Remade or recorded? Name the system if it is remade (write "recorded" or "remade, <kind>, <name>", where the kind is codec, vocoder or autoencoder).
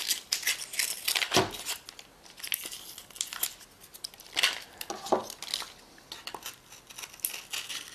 recorded